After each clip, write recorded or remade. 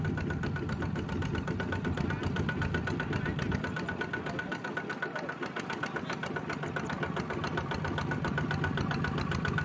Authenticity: recorded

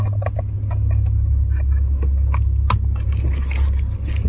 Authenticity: recorded